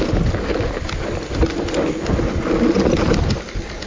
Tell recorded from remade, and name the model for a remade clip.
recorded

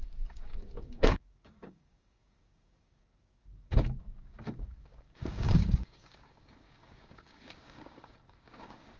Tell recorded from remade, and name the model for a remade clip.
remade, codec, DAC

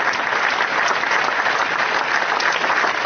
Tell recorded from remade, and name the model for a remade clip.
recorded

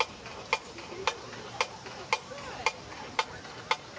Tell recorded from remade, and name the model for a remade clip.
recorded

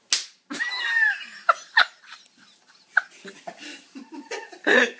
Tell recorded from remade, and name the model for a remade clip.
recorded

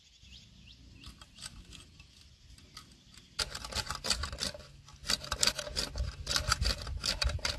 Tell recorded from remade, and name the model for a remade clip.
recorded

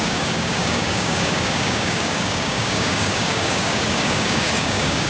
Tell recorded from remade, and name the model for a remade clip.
remade, codec, DAC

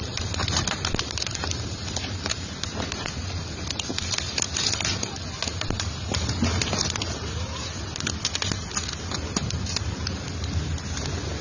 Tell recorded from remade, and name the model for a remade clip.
recorded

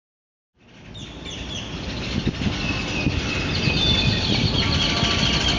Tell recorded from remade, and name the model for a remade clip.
recorded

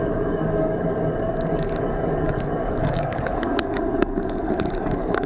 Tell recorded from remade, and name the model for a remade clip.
remade, codec, DAC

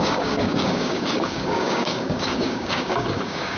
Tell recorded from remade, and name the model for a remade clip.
remade, codec, DAC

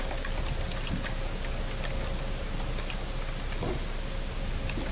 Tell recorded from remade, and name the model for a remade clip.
recorded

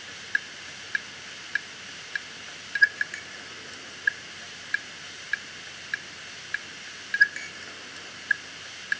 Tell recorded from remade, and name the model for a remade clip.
recorded